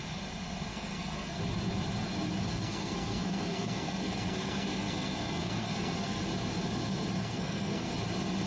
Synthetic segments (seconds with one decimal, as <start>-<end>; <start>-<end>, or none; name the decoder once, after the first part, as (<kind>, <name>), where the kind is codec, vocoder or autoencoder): 0.7-1.4 (codec, SNAC); 2.5-6.2; 7.2-7.9